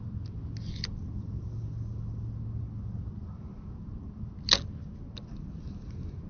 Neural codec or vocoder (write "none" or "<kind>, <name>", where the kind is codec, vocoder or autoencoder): none